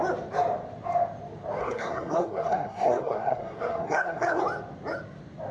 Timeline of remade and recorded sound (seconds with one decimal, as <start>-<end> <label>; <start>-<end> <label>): 0.0-1.6 recorded; 1.6-4.4 remade; 4.4-5.5 recorded